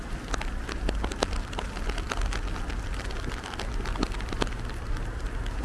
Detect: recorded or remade recorded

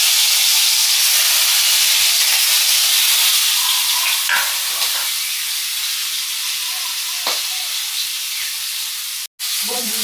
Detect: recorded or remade recorded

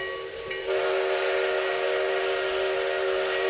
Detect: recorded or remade recorded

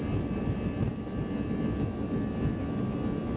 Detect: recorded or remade recorded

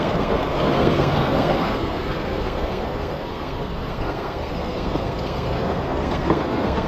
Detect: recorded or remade remade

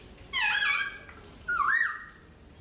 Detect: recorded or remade recorded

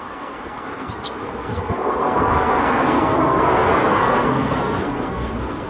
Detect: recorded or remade remade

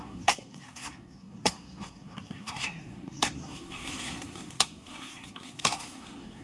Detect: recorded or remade remade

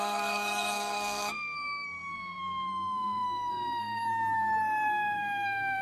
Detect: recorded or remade remade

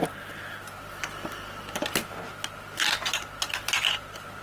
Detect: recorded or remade recorded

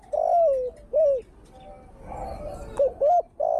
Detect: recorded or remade recorded